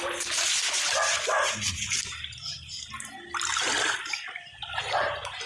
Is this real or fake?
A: real